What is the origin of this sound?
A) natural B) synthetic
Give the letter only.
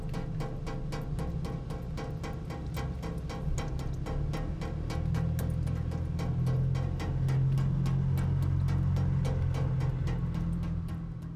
A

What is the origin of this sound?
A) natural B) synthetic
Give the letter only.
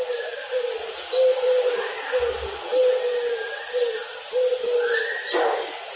A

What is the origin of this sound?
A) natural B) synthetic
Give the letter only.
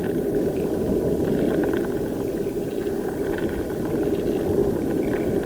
B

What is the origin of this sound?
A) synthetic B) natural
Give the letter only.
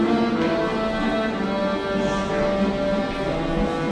B